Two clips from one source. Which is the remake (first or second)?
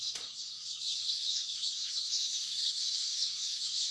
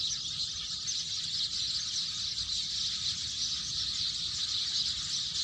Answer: first